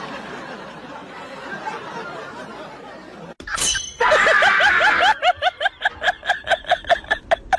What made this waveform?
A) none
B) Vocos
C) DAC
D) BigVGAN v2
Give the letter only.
A